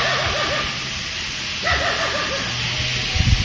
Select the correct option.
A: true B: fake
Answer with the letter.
A